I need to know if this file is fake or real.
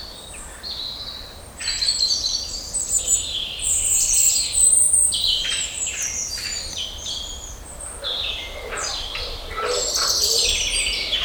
fake